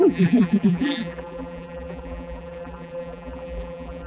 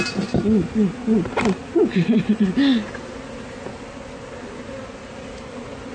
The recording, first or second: second